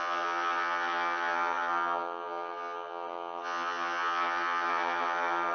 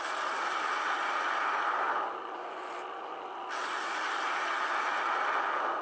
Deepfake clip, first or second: first